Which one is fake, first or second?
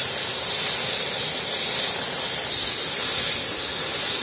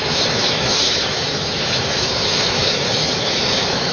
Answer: second